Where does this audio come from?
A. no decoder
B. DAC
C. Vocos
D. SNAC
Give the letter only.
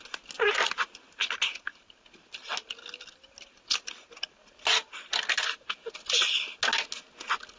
A